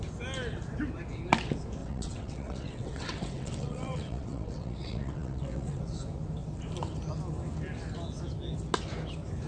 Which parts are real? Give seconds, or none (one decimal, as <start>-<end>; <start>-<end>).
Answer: 0.0-1.8; 5.8-9.5